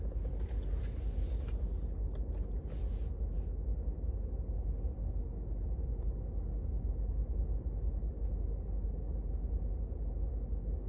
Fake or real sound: real